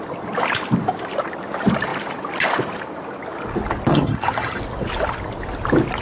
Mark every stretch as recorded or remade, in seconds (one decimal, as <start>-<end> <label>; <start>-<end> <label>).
0.0-3.9 recorded; 3.9-4.6 remade; 4.6-6.0 recorded

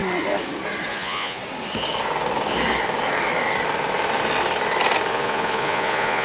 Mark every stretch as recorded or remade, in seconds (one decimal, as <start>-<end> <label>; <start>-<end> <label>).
0.0-0.9 recorded; 0.9-1.4 remade; 1.4-5.1 recorded; 5.1-6.2 remade

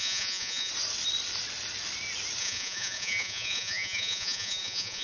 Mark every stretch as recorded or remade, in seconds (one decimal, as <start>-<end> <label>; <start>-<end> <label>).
0.0-0.7 remade; 0.7-2.4 recorded; 2.4-5.0 remade

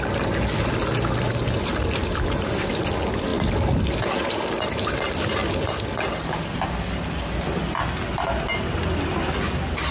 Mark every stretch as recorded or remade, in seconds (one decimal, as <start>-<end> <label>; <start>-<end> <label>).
0.0-9.9 recorded

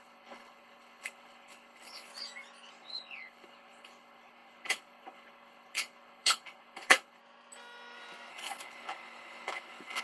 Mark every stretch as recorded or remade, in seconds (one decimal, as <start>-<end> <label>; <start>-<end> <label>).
0.0-2.1 remade; 2.1-2.7 recorded; 2.7-7.2 remade; 7.2-8.3 recorded; 8.3-10.0 remade